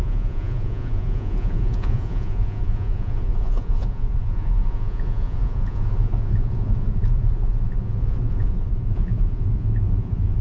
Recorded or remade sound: remade